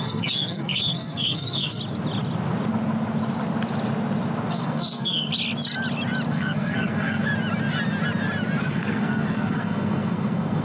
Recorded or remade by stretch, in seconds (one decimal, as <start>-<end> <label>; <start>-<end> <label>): 0.0-1.8 remade; 1.8-4.5 recorded; 4.5-5.3 remade; 5.3-6.3 recorded; 6.3-7.3 remade; 7.3-8.6 recorded; 8.6-10.6 remade